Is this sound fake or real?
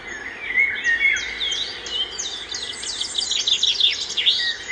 real